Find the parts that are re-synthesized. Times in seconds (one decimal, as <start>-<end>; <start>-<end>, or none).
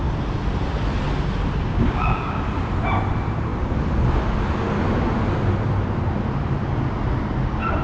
1.7-2.4